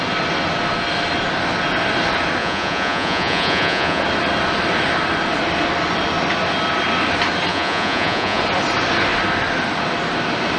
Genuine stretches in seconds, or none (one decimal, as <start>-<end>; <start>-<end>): 0.0-2.4; 4.0-7.5; 8.4-10.6